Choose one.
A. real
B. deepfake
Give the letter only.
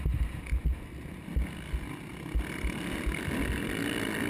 A